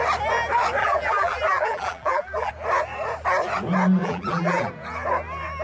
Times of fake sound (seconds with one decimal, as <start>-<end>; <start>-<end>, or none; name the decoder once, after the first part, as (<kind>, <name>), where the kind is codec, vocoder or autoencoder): 0.8-2.5 (vocoder, BigVGAN v2); 4.0-4.7